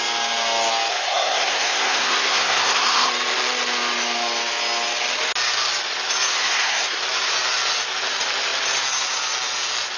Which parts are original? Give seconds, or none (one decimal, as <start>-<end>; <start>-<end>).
0.0-0.9; 3.1-6.3; 7.0-10.0